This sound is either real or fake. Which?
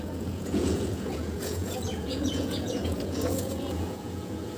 fake